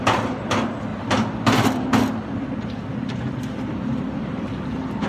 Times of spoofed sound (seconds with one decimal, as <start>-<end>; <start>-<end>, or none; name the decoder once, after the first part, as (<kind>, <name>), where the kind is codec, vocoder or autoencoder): 0.9-4.0 (vocoder, BigVGAN v2)